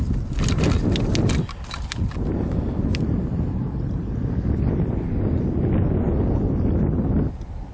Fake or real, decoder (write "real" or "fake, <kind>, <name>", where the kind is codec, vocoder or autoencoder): real